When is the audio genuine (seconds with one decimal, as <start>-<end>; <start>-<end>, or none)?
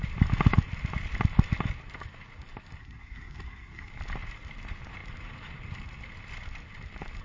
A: 0.0-2.8; 3.9-7.2